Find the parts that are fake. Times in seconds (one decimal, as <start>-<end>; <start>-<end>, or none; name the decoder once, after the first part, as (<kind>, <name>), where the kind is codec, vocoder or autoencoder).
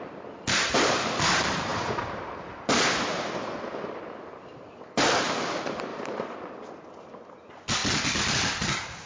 0.0-1.7 (vocoder, BigVGAN v2); 4.4-9.1